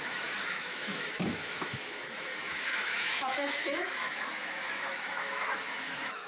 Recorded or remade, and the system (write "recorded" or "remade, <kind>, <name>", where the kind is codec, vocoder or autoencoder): remade, autoencoder, DAC-VAE